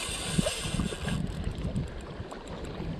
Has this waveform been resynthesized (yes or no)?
no